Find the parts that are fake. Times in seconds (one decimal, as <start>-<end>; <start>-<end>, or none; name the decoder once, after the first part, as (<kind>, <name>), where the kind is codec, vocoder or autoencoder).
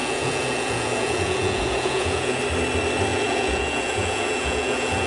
0.0-2.4 (vocoder, Vocos); 3.1-5.1